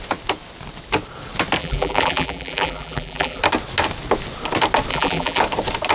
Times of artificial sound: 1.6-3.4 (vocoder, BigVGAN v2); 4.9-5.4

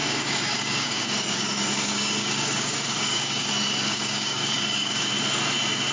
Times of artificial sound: 0.0-3.5 (codec, DAC); 3.9-5.1